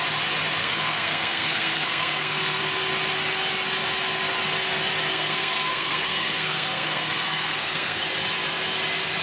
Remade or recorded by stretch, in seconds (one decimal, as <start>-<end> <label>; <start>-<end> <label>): 0.0-0.6 recorded; 0.6-2.6 remade; 2.6-5.1 recorded; 5.1-8.0 remade; 8.0-9.2 recorded